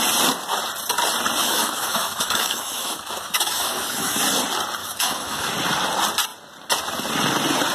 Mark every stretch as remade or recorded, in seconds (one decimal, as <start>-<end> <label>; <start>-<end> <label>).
0.0-1.4 recorded; 1.4-4.2 remade; 4.2-4.8 recorded; 4.8-5.5 remade; 5.5-7.7 recorded